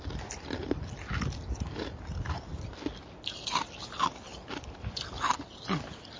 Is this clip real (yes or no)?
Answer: yes